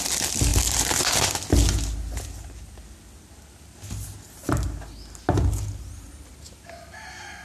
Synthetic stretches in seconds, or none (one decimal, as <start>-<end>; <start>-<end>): none